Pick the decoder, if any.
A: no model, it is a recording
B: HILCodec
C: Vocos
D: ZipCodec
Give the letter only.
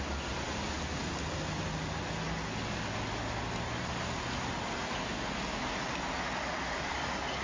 A